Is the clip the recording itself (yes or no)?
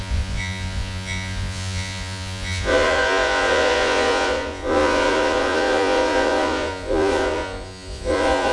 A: no